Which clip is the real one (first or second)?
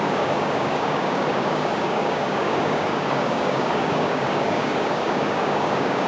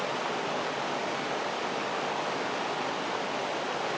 second